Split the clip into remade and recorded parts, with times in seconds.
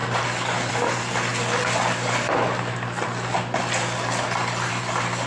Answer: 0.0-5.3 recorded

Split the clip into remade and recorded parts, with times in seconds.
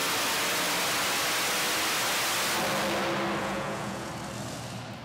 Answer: 0.0-3.4 recorded; 3.4-4.1 remade; 4.1-5.0 recorded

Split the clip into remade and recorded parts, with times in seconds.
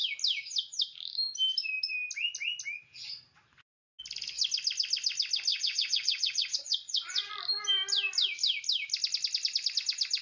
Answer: 0.0-5.5 recorded; 5.5-7.3 remade; 7.3-10.2 recorded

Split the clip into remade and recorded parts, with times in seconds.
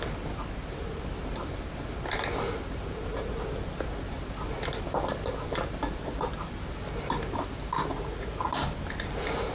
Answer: 0.0-7.9 recorded; 7.9-8.5 remade; 8.5-9.5 recorded